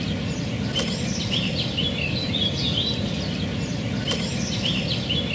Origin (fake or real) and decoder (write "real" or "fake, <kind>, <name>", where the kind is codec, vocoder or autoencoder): real